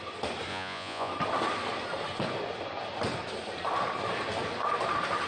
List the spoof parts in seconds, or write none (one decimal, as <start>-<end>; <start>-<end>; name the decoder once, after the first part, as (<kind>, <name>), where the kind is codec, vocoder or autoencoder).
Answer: 0.5-1.1 (vocoder, Vocos)